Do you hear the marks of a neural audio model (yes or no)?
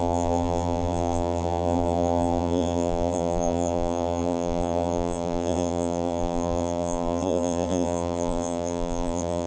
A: yes